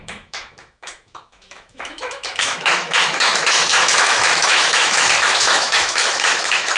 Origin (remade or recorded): remade